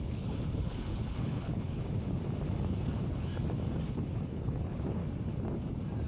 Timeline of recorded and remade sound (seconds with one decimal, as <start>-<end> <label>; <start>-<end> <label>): 0.0-1.8 remade; 1.8-2.8 recorded; 2.8-3.3 remade; 3.3-3.9 recorded; 3.9-5.0 remade; 5.0-6.1 recorded